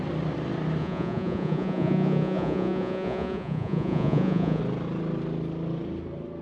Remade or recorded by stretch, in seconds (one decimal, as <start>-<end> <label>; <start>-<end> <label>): 0.0-0.8 recorded; 0.8-4.6 remade; 4.6-6.4 recorded